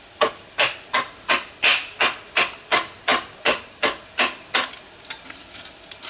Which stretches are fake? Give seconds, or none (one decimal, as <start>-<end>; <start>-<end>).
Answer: none